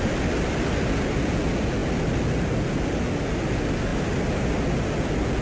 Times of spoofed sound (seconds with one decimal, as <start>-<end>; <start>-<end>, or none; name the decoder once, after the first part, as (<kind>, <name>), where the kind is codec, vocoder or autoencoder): none